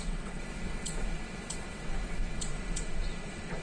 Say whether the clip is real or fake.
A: fake